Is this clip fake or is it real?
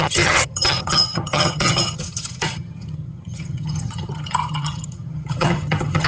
fake